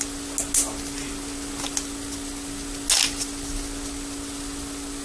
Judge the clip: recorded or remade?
recorded